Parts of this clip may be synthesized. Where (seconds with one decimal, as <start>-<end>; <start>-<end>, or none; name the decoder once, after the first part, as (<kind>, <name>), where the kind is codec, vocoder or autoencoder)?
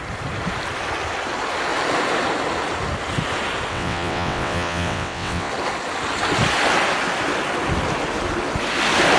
3.7-5.5 (vocoder, WaveNeXt)